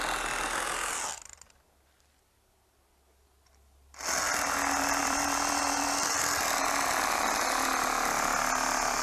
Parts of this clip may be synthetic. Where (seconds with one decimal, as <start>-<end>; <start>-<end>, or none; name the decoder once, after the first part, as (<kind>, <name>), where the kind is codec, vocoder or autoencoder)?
5.0-6.2 (vocoder, BigVGAN v2)